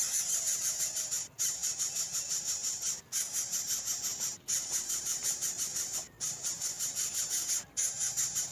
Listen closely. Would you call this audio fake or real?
real